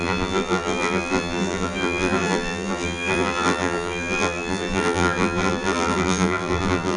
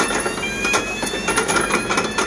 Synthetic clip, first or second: first